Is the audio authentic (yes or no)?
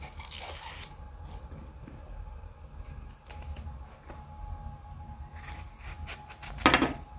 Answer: yes